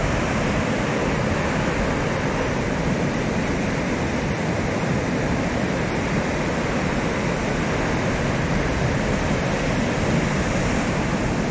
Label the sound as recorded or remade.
recorded